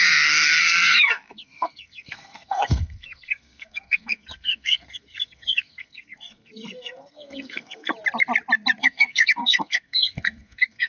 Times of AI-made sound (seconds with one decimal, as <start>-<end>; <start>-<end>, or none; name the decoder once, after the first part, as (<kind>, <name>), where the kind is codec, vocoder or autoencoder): 0.0-7.9 (codec, SNAC); 8.8-10.9